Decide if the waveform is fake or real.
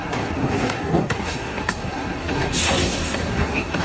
fake